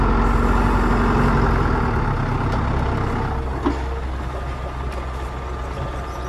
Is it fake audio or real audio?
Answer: real